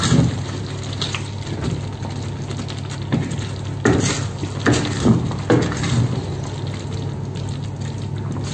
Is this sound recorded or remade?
recorded